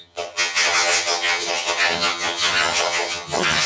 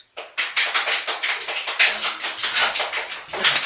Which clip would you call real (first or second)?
second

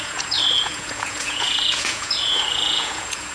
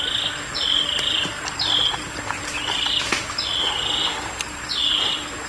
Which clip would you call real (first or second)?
second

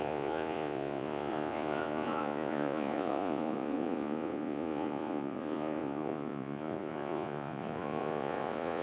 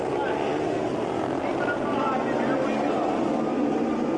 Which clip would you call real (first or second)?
second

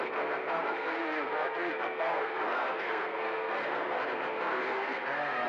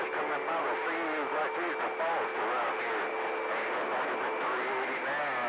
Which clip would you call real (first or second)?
second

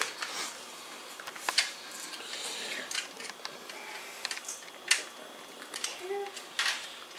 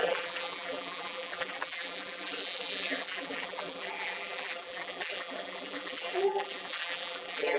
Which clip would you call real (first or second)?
first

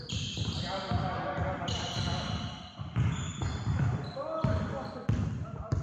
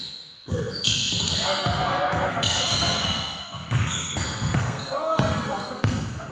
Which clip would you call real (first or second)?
first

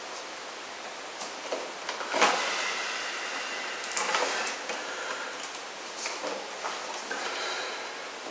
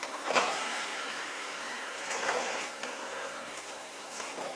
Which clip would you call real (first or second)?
first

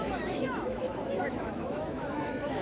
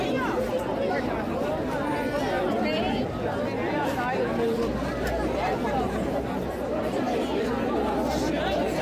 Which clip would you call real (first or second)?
second